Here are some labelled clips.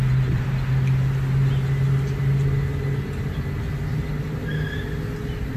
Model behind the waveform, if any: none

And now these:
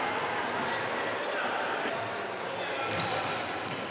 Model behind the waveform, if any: none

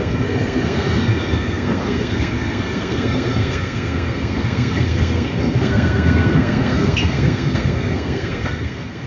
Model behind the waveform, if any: codec, SNAC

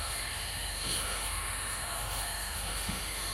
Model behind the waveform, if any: autoencoder, DAC-VAE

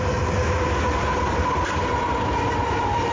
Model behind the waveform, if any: none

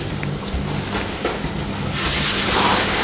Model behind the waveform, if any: none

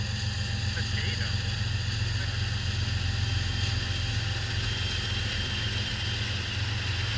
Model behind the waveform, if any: none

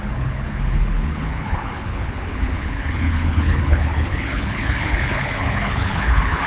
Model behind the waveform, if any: codec, HILCodec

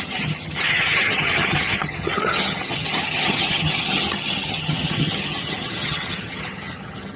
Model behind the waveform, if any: vocoder, HiFi-GAN